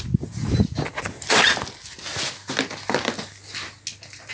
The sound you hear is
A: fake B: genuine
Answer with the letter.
B